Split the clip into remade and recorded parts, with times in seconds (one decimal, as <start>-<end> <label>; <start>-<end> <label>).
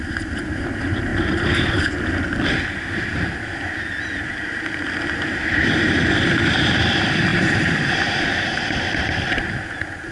0.0-1.1 recorded; 1.1-1.8 remade; 1.8-7.3 recorded; 7.3-8.9 remade; 8.9-10.1 recorded